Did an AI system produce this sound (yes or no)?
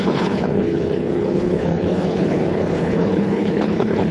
yes